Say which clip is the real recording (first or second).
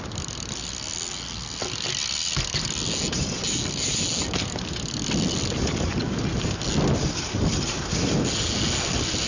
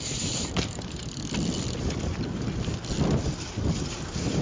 first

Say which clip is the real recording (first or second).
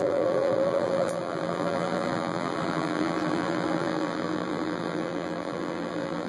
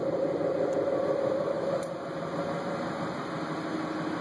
second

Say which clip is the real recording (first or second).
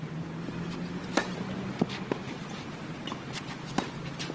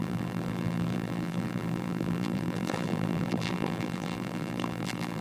first